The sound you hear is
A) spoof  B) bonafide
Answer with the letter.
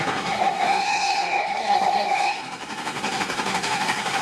A